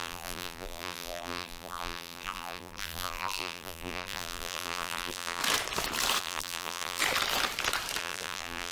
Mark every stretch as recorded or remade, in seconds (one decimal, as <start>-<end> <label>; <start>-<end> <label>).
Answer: 0.0-5.4 remade; 5.4-6.2 recorded; 6.2-7.0 remade; 7.0-8.0 recorded; 8.0-8.7 remade